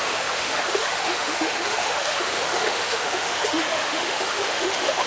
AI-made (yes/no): yes